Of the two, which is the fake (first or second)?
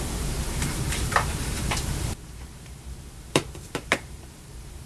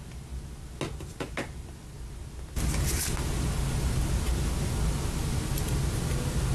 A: first